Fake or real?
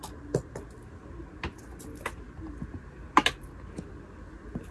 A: real